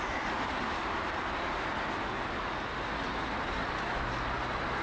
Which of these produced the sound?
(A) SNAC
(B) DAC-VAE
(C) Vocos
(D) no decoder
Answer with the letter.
D